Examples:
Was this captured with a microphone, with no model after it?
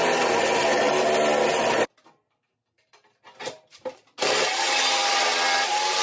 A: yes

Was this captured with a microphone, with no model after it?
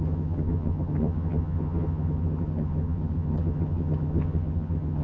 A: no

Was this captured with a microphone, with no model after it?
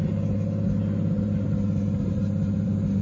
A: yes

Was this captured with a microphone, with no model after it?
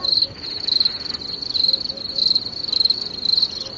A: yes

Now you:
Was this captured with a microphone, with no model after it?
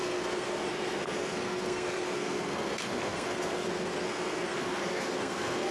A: no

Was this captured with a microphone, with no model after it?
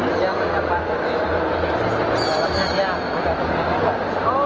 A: yes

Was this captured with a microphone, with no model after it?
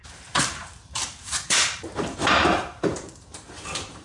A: no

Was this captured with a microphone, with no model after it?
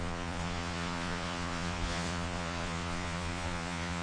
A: no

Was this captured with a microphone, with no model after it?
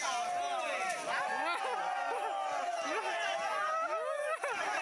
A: yes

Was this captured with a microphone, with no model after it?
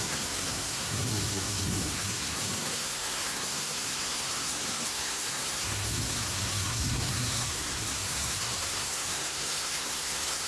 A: no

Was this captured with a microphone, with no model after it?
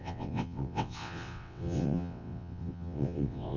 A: no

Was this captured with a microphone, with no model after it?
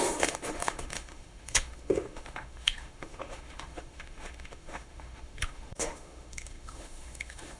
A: no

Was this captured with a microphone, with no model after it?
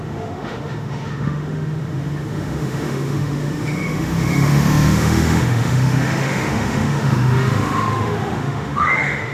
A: no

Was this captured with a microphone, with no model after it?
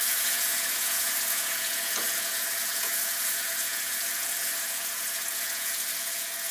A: no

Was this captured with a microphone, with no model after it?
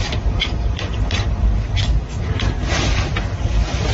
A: yes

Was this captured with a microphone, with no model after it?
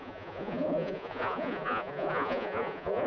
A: no